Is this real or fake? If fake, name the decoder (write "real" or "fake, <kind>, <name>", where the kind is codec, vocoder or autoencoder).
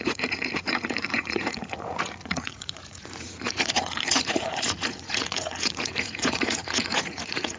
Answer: fake, vocoder, Vocos